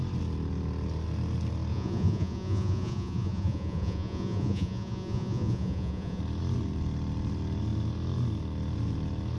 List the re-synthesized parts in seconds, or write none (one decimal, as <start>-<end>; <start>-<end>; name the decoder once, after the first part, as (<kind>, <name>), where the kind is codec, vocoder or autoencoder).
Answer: 1.7-6.2 (vocoder, Vocos)